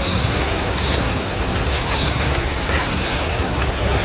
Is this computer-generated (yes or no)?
yes